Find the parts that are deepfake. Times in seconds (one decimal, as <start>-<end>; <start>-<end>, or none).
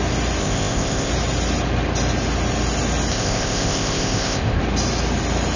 0.4-1.1; 3.1-4.6